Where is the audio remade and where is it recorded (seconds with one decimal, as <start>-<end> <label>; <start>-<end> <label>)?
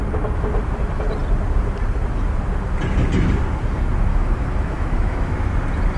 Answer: 0.0-4.1 recorded; 4.1-5.5 remade; 5.5-6.0 recorded